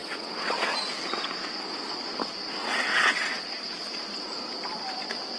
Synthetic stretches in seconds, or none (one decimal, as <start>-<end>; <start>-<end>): 0.0-0.7; 2.6-3.4